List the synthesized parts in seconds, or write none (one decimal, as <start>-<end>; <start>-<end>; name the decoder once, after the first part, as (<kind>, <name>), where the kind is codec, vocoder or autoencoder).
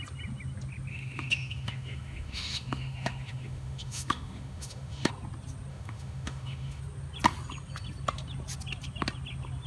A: 0.9-5.1 (autoencoder, DAC-VAE); 5.7-6.8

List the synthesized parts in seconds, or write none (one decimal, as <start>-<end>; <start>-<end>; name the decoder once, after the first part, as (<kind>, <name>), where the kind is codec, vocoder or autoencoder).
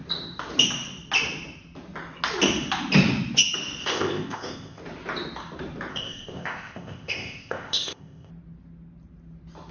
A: 3.8-4.8 (codec, ZipCodec); 5.9-8.3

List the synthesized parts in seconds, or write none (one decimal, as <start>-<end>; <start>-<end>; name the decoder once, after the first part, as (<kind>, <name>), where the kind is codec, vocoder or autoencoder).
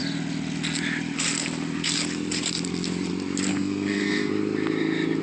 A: 3.5-4.3 (codec, SNAC)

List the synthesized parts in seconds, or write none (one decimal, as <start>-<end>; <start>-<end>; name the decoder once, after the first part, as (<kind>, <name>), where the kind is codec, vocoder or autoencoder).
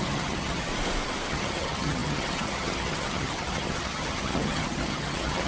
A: 0.0-0.7 (vocoder, HiFi-GAN); 1.3-5.5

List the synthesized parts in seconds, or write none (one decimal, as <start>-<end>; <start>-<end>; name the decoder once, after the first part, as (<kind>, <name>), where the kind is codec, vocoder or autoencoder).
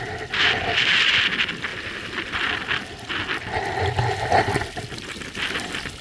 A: none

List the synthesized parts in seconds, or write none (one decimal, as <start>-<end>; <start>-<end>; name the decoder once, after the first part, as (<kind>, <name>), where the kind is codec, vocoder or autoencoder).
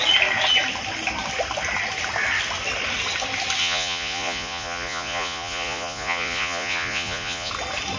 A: 3.6-7.5 (vocoder, Vocos)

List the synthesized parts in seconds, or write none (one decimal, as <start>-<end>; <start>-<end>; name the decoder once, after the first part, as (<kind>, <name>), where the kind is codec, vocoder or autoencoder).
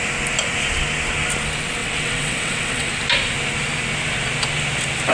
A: 1.8-2.9 (vocoder, WaveNeXt)